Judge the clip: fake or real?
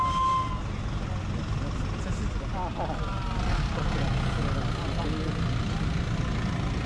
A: real